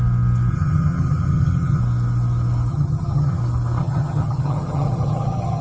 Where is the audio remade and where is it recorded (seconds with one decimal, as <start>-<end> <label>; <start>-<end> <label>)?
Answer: 0.0-0.5 recorded; 0.5-1.8 remade; 1.8-2.7 recorded; 2.7-3.4 remade; 3.4-3.8 recorded; 3.8-5.6 remade